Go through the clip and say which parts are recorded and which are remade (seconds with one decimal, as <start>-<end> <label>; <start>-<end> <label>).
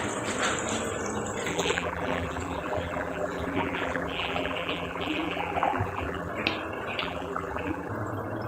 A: 0.0-1.5 recorded; 1.5-6.3 remade; 6.3-7.0 recorded; 7.0-7.9 remade; 7.9-8.5 recorded